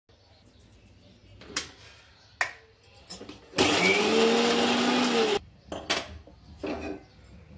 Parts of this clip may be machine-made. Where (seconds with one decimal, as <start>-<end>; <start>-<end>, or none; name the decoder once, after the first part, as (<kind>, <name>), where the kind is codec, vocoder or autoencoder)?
none